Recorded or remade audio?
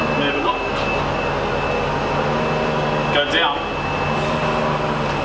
recorded